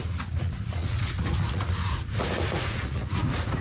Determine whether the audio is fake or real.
fake